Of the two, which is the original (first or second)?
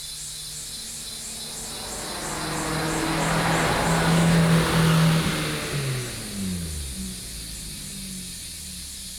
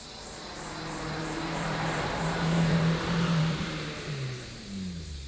first